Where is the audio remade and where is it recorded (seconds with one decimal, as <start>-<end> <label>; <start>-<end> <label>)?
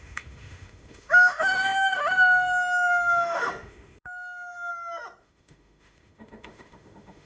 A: 0.0-4.7 remade; 4.7-5.2 recorded; 5.2-7.3 remade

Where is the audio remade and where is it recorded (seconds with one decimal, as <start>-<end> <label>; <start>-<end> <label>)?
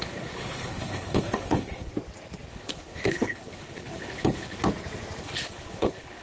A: 0.0-1.9 remade; 1.9-2.5 recorded; 2.5-4.6 remade; 4.6-5.2 recorded; 5.2-6.2 remade